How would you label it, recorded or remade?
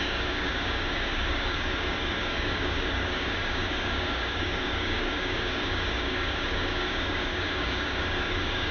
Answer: remade